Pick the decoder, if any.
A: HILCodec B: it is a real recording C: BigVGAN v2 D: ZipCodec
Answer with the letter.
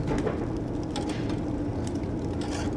B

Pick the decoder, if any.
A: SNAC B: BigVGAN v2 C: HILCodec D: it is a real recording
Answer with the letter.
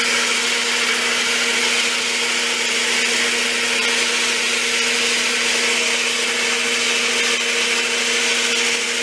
D